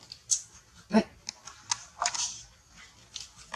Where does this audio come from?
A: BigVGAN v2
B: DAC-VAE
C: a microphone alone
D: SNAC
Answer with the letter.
C